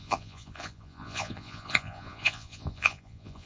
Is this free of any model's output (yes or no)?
no